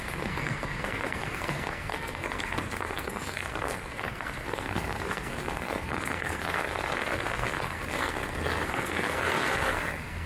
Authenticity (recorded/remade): remade